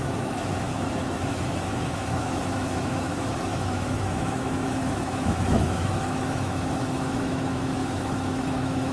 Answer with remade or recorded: remade